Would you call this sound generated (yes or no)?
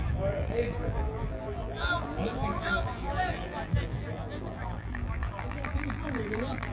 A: yes